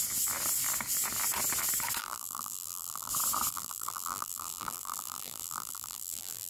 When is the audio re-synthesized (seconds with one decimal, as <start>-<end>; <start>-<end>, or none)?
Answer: 2.0-3.1; 3.5-6.5